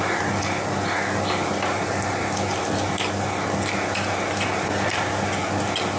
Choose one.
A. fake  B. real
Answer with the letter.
B